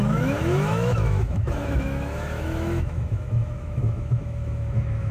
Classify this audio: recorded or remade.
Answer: remade